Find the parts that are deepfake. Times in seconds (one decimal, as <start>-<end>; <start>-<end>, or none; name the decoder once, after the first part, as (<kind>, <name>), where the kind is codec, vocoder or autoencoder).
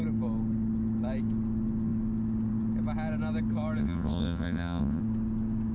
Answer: 3.8-5.0 (vocoder, WaveNeXt)